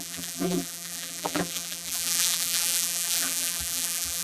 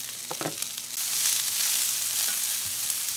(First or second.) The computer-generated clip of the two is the first